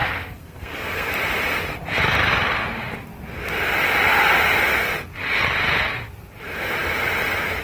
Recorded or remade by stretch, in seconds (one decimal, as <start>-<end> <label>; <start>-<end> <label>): 0.0-1.1 remade; 1.1-7.6 recorded

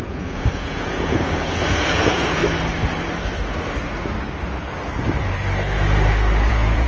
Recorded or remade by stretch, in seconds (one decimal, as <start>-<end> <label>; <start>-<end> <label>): 0.0-2.4 remade; 2.4-6.5 recorded; 6.5-6.9 remade

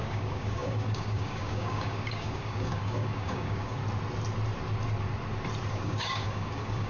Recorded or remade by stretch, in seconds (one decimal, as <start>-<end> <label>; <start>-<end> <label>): 0.0-3.8 remade; 3.8-5.7 recorded; 5.7-6.9 remade

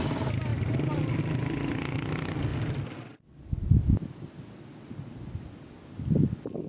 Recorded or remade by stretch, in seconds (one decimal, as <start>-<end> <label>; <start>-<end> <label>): 0.0-6.7 recorded

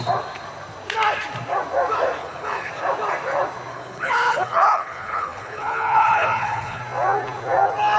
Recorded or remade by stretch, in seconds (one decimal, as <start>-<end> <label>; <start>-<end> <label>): 0.0-2.2 recorded; 2.2-2.7 remade; 2.7-3.7 recorded; 3.7-6.8 remade; 6.8-8.0 recorded

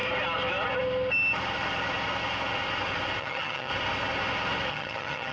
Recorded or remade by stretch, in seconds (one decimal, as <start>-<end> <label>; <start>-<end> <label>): 0.0-3.2 recorded; 3.2-3.7 remade; 3.7-4.7 recorded; 4.7-5.3 remade

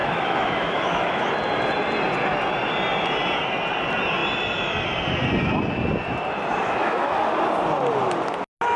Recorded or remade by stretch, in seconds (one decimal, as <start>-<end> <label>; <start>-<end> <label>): 0.0-1.3 remade; 1.3-6.6 recorded; 6.6-7.3 remade; 7.3-8.8 recorded